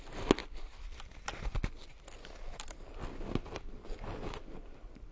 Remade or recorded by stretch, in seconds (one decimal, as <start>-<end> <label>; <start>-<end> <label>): 0.0-5.1 recorded